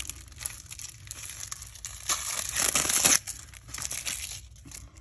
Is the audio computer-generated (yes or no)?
no